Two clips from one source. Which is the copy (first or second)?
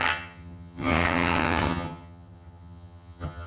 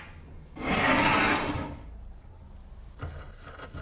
first